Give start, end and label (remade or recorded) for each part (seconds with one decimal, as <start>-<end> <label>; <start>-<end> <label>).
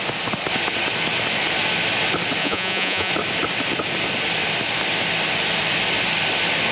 0.0-2.4 recorded; 2.4-3.1 remade; 3.1-6.7 recorded